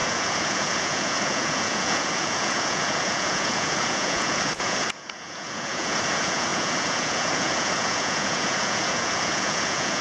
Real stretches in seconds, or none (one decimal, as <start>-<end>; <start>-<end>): none